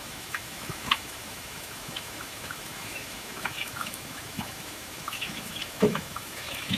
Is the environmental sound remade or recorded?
remade